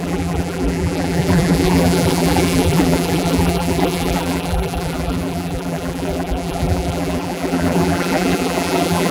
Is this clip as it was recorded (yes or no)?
no